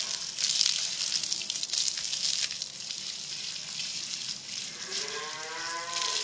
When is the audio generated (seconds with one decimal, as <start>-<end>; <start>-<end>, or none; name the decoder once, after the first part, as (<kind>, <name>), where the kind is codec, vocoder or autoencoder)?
none